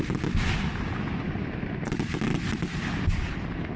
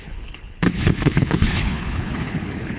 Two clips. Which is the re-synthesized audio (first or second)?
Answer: second